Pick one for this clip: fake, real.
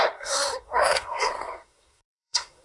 fake